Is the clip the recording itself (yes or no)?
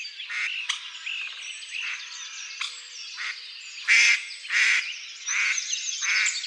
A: yes